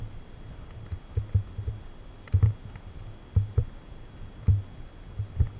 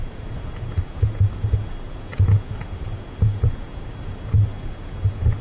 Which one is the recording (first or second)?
first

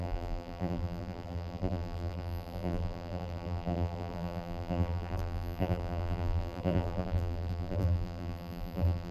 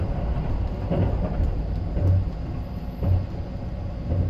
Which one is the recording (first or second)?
second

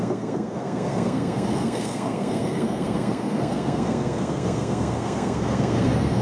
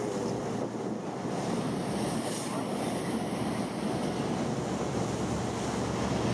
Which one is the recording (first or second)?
second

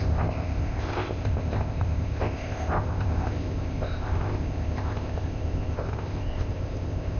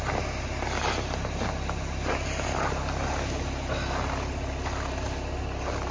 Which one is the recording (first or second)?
second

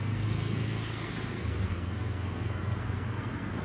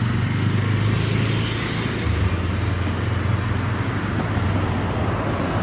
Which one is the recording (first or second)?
second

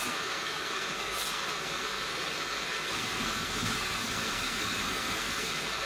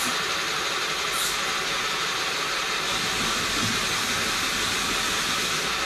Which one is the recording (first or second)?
second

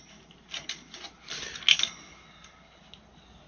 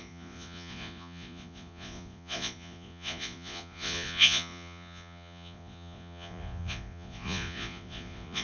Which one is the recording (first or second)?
first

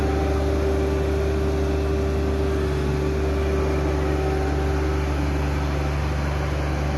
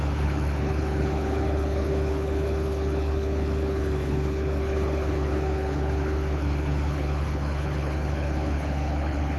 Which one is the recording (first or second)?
first